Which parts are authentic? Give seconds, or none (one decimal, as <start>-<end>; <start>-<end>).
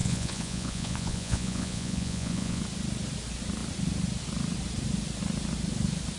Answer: 2.6-6.2